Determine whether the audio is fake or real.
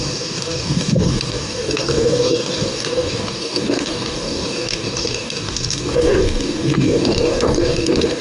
fake